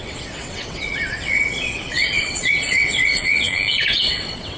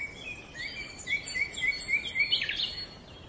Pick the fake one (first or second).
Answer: first